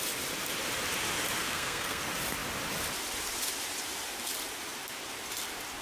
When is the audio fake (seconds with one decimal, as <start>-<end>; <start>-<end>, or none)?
1.4-2.0